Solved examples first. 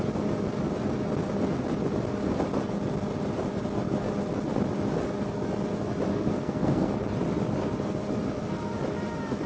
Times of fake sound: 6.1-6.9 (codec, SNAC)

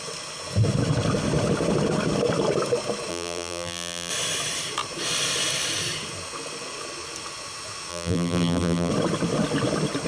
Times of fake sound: 3.1-4.1 (vocoder, BigVGAN v2); 7.9-8.9